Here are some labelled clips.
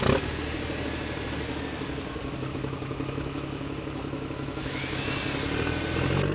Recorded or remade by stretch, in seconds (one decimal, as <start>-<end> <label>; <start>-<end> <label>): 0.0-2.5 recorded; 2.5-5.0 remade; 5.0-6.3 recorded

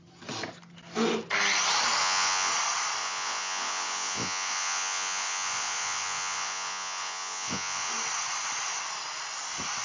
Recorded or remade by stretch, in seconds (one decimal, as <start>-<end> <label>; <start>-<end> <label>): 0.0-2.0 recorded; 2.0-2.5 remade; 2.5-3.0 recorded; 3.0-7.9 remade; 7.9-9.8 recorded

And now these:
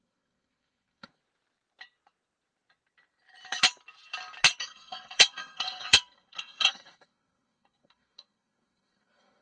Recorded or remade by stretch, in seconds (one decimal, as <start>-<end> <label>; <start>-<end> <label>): 0.0-1.2 remade; 1.2-4.6 recorded; 4.6-9.4 remade